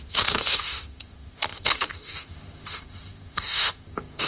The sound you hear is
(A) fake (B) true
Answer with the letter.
A